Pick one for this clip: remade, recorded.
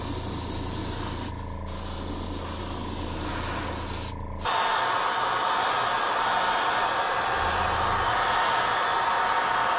recorded